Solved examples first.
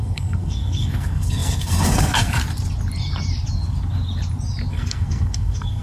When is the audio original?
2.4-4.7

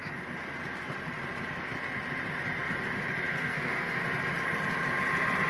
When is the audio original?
0.0-3.3; 4.0-5.5

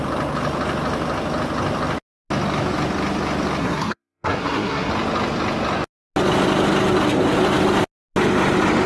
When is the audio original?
0.0-3.6; 4.9-8.9

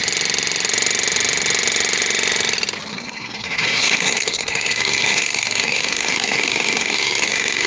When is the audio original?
0.0-2.9

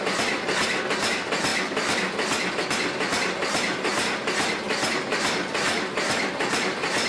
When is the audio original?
0.0-7.1